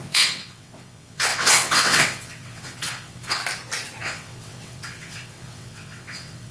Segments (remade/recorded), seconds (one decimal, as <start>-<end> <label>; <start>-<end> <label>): 0.0-3.4 remade; 3.4-4.0 recorded; 4.0-6.5 remade